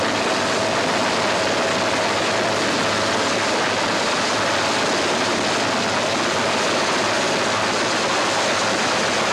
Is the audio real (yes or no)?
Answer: yes